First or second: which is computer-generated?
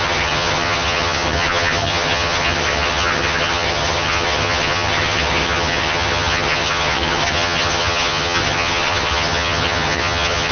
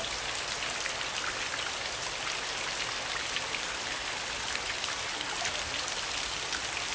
first